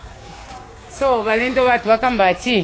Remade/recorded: remade